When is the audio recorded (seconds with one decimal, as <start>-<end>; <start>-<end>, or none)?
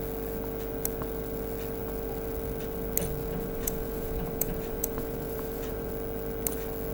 0.0-3.2; 5.9-6.9